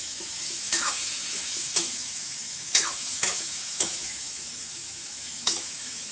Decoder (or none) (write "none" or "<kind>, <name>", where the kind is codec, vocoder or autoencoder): autoencoder, DAC-VAE